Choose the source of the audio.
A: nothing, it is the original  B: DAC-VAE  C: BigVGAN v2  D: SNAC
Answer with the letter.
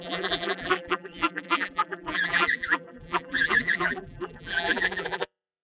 C